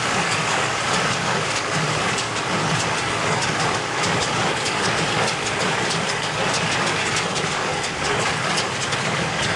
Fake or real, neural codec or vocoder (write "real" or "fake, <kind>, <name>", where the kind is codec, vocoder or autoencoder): fake, codec, DAC